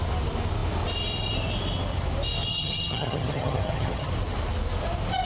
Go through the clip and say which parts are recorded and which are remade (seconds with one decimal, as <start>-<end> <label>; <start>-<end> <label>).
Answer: 0.0-2.5 recorded; 2.5-4.1 remade; 4.1-5.3 recorded